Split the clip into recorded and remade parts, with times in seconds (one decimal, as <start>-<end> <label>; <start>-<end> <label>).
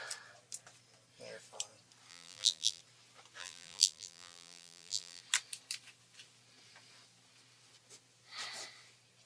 0.0-2.1 recorded; 2.1-2.8 remade; 2.8-3.4 recorded; 3.4-5.2 remade; 5.2-9.3 recorded